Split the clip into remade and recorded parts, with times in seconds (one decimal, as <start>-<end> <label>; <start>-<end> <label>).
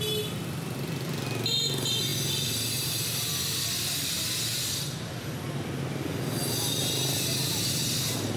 0.0-8.4 recorded